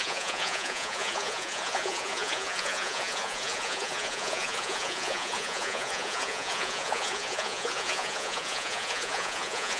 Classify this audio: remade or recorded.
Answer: remade